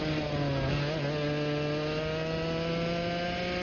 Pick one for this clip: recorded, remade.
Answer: recorded